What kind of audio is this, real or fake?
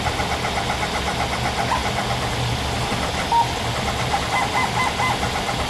real